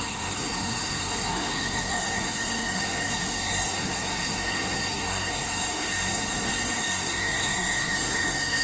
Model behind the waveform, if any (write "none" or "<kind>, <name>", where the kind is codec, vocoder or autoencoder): codec, SNAC